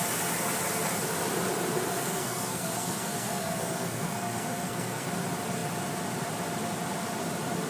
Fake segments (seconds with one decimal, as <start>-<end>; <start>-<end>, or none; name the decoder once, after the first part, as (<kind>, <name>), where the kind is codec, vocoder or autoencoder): 1.9-5.1 (codec, SNAC)